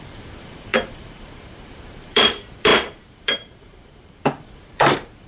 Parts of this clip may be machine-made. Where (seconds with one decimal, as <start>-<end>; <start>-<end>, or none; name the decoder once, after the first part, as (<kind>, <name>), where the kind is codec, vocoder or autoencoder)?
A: 0.0-5.3 (vocoder, BigVGAN v2)